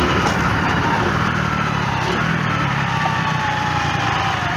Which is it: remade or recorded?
remade